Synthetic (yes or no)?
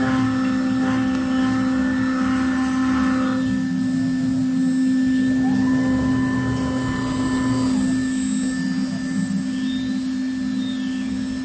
no